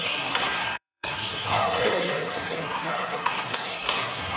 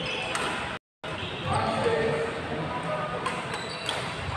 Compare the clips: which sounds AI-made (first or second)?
first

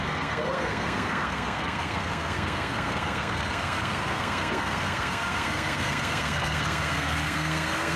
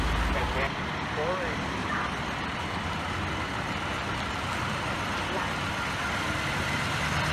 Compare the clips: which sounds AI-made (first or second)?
first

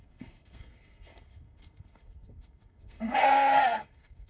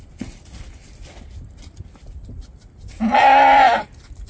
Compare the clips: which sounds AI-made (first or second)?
first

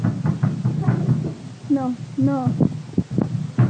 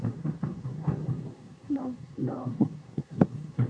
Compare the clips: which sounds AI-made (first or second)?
second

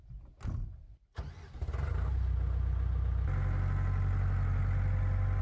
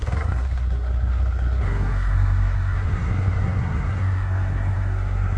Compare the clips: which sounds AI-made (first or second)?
second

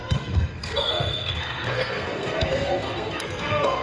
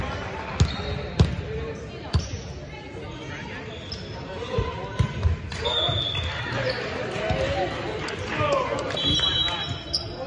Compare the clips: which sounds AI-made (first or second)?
first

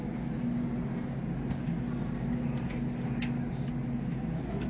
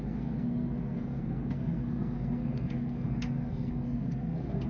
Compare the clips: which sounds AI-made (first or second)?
second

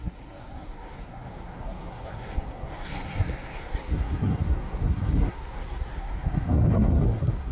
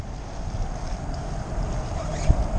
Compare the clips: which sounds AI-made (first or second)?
first